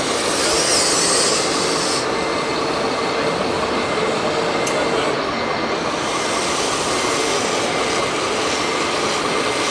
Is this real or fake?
real